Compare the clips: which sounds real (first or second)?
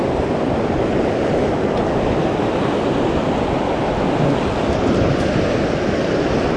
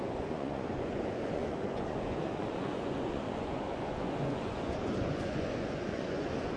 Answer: first